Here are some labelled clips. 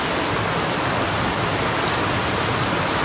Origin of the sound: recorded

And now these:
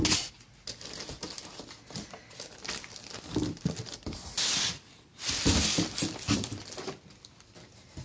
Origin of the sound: recorded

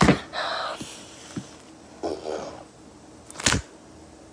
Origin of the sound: recorded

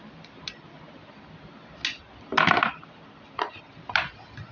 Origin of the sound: recorded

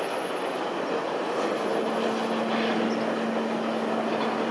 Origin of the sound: recorded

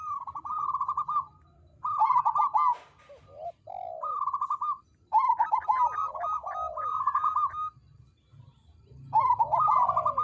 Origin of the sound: recorded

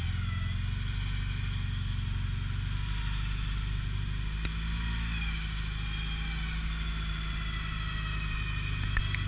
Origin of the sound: recorded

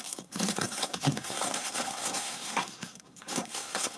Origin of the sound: remade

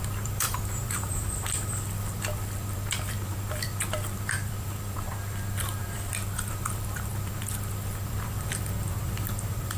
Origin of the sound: remade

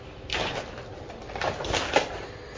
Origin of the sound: recorded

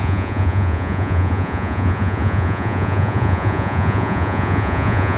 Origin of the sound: remade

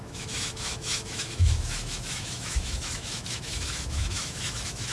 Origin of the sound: remade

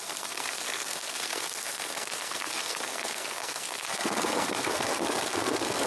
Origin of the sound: remade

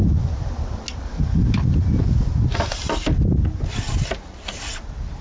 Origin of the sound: recorded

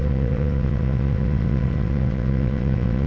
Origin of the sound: remade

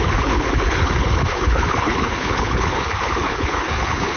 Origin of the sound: remade